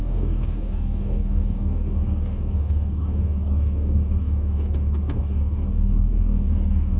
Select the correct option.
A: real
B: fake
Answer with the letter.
B